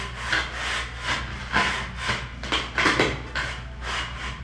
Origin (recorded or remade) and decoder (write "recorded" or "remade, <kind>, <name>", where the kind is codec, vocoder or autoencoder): recorded